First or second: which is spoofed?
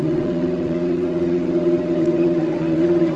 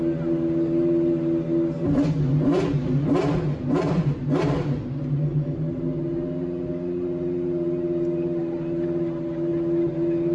first